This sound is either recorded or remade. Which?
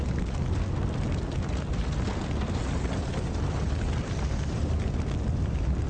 recorded